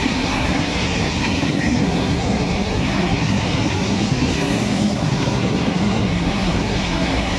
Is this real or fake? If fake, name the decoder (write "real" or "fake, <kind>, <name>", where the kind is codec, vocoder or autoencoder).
fake, codec, SNAC